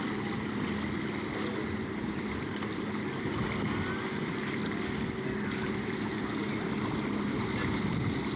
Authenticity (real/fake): real